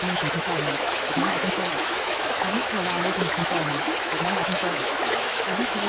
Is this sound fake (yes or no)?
yes